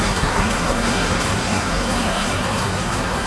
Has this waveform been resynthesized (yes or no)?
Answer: yes